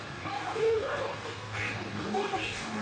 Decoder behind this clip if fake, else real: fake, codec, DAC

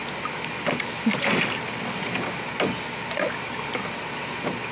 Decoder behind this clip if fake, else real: real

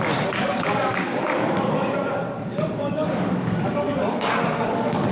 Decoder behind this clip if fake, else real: fake, codec, DAC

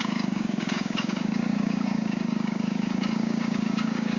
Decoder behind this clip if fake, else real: fake, codec, DAC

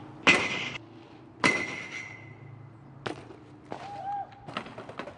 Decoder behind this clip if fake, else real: real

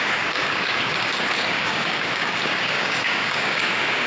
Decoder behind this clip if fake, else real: fake, codec, DAC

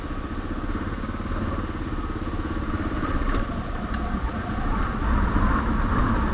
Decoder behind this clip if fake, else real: real